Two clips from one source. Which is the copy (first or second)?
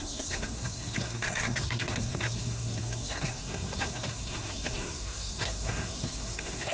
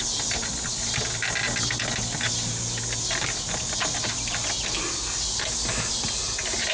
first